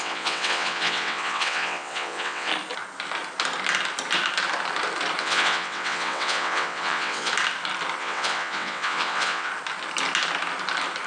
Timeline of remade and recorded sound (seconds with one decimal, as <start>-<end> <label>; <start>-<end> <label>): 0.0-2.5 remade; 2.5-5.2 recorded; 5.2-7.3 remade; 7.3-8.0 recorded; 8.0-9.5 remade; 9.5-11.1 recorded